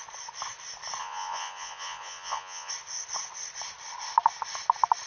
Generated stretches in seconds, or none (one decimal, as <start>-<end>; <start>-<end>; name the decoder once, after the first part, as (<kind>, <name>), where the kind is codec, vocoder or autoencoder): 1.0-2.7 (vocoder, Vocos)